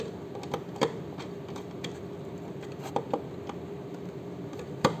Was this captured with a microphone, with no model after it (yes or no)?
yes